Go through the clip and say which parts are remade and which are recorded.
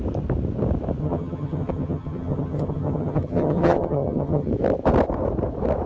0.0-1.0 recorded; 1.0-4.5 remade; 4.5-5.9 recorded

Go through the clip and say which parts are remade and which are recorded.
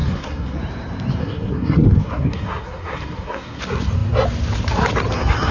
0.0-0.6 remade; 0.6-1.2 recorded; 1.2-3.6 remade; 3.6-5.5 recorded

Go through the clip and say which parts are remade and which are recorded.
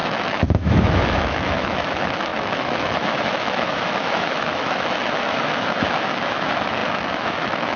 0.0-7.8 remade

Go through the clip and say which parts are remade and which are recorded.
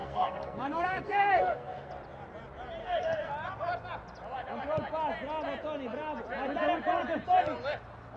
0.0-1.9 remade; 1.9-2.8 recorded; 2.8-3.3 remade; 3.3-8.2 recorded